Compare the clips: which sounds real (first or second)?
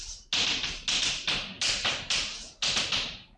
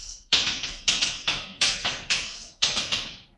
first